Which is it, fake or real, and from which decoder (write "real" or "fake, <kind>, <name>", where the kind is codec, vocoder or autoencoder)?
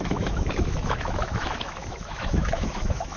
fake, autoencoder, DAC-VAE